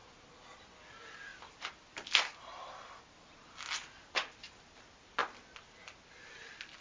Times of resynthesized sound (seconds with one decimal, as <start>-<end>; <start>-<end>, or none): none